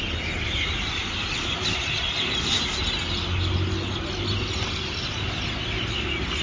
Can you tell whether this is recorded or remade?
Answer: recorded